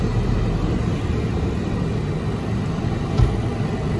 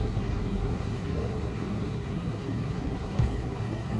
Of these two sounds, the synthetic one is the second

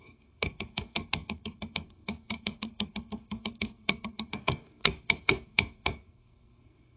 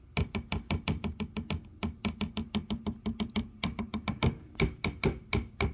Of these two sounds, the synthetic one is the first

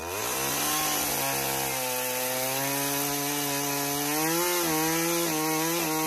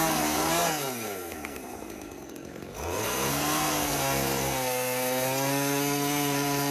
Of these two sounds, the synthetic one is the second